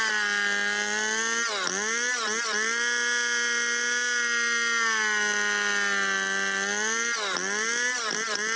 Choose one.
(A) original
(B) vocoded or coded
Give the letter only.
A